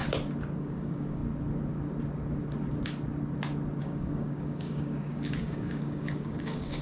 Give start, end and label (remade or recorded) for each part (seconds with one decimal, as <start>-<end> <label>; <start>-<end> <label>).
0.0-0.6 recorded; 0.6-1.2 remade; 1.2-3.8 recorded; 3.8-6.8 remade